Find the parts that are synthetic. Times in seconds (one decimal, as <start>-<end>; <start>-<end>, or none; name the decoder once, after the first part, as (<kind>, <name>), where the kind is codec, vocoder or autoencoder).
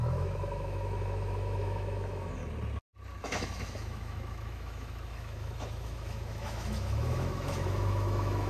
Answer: 0.0-2.4 (autoencoder, DAC-VAE); 3.2-8.5